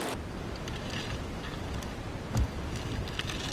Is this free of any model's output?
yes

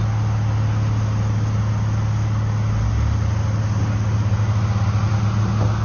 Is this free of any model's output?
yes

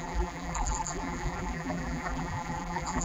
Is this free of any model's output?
no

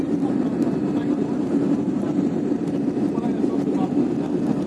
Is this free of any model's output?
no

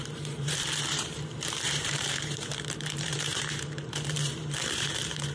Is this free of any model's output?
no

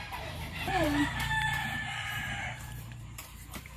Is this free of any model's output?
no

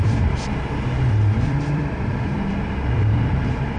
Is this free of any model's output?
no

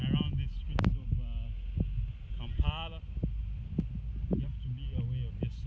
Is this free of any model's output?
yes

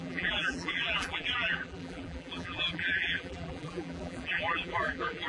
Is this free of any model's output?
no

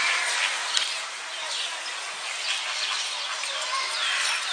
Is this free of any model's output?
yes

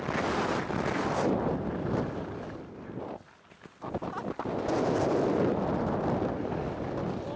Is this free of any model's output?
yes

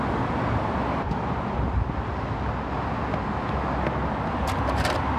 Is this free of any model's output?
yes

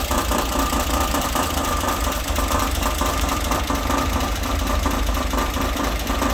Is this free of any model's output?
no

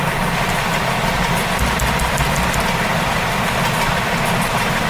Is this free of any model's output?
yes